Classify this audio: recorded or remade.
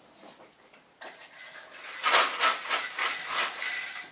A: recorded